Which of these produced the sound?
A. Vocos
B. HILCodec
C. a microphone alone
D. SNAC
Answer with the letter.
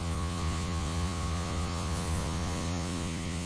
A